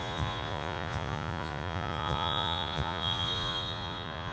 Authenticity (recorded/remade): remade